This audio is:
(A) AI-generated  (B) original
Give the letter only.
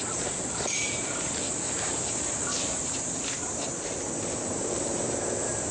A